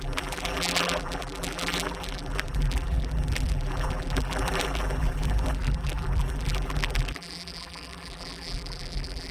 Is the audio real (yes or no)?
no